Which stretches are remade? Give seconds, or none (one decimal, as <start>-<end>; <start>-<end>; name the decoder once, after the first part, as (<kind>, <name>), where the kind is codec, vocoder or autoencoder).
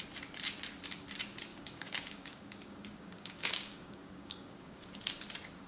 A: 1.5-4.9 (codec, DAC)